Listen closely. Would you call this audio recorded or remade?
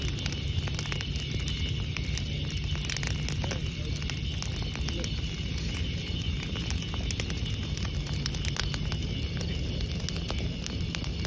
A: recorded